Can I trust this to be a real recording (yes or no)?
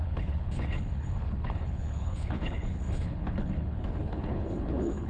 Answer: no